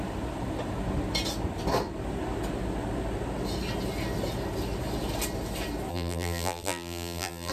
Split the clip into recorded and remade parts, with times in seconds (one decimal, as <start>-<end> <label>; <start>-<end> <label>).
0.0-5.9 recorded; 5.9-7.5 remade